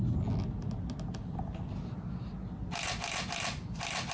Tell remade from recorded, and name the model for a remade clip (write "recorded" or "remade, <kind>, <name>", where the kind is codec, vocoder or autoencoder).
recorded